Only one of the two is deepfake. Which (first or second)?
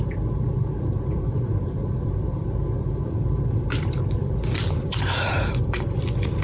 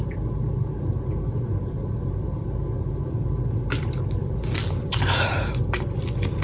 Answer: first